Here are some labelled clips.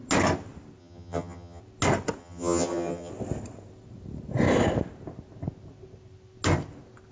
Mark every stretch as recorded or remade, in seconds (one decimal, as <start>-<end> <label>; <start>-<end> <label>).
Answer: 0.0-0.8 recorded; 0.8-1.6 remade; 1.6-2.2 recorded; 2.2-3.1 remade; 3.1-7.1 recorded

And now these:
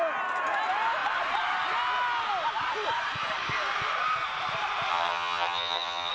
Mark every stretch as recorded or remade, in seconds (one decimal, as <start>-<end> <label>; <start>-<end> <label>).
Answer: 0.0-4.9 recorded; 4.9-6.1 remade

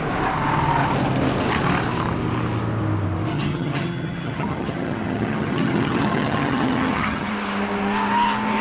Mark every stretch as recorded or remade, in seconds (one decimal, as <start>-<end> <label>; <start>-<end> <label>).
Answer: 0.0-3.3 recorded; 3.3-7.3 remade; 7.3-8.6 recorded